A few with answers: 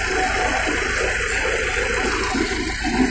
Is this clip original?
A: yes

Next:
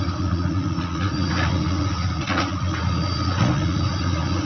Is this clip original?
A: no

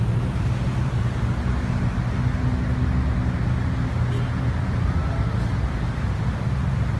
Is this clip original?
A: yes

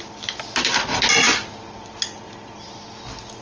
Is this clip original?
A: yes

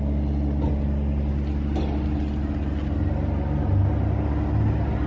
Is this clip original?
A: yes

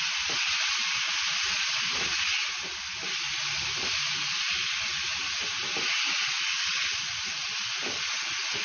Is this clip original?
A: yes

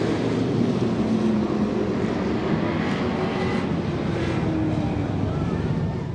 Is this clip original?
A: yes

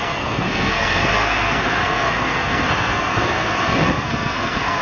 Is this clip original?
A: no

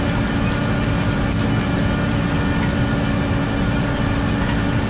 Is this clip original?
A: yes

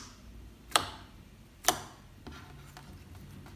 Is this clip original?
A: yes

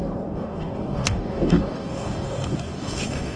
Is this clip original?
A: no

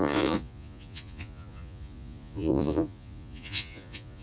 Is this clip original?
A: no